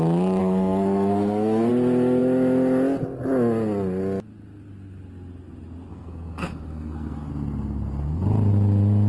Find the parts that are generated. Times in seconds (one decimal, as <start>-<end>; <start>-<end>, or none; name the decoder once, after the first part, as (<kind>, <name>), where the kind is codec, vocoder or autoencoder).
0.4-1.7 (codec, SNAC); 5.9-7.3

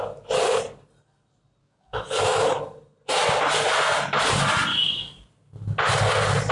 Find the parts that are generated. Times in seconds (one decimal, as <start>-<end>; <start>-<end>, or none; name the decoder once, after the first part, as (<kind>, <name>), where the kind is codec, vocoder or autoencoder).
1.6-2.6 (codec, DAC); 4.7-5.3

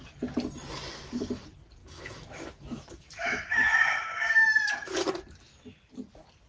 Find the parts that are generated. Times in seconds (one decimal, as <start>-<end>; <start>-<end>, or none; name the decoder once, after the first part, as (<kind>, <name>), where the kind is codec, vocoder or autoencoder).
1.8-4.6 (autoencoder, DAC-VAE)

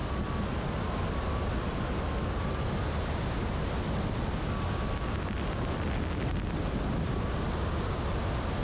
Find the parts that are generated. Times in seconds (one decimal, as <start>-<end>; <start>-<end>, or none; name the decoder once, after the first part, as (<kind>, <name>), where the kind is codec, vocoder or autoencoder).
none

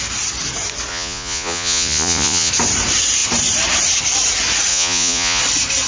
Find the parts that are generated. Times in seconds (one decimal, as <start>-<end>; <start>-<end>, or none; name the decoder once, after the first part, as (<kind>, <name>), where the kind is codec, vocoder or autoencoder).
0.9-2.5 (vocoder, Vocos); 4.7-5.4

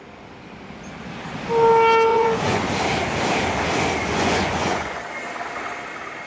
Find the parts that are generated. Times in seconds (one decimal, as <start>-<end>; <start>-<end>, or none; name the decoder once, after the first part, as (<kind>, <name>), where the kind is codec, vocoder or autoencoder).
2.1-2.7 (vocoder, Vocos); 4.0-5.0

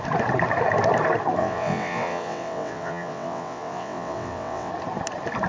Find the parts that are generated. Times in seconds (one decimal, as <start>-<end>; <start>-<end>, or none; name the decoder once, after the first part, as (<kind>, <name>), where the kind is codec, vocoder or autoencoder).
1.4-4.7 (vocoder, WaveNeXt)